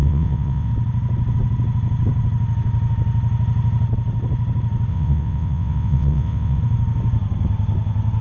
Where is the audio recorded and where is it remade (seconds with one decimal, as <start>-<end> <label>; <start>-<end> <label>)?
0.0-0.7 remade; 0.7-4.9 recorded; 4.9-6.6 remade; 6.6-8.2 recorded